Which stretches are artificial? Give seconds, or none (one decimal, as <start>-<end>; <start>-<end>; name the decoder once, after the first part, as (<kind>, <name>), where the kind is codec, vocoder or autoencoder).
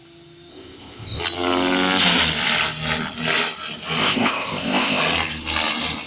0.5-1.2 (codec, ZipCodec); 4.0-5.0